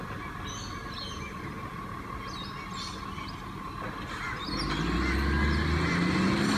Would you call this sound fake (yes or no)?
no